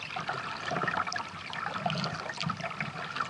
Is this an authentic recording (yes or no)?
yes